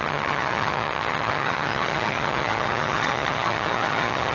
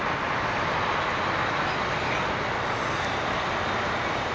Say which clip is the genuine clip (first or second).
second